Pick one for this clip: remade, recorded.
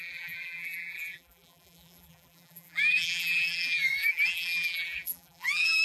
remade